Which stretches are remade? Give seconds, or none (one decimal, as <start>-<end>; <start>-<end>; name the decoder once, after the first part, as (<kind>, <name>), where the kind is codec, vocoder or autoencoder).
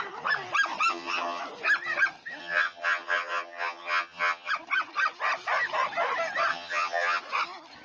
0.9-1.4 (vocoder, HiFi-GAN); 2.4-4.5; 6.5-7.2